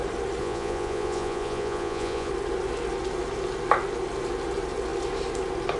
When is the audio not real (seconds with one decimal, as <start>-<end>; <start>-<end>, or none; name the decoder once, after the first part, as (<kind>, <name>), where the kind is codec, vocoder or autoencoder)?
0.4-2.3 (vocoder, Vocos)